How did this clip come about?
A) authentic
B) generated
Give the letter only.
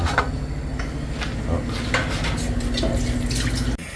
A